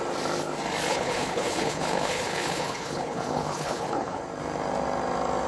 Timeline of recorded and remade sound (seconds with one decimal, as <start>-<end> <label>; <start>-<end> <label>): 0.0-0.9 recorded; 0.9-4.2 remade; 4.2-5.5 recorded